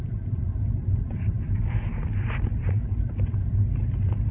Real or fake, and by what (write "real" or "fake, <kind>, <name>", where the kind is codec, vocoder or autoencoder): real